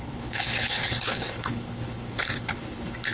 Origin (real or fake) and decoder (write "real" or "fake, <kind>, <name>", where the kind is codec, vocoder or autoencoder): fake, codec, HILCodec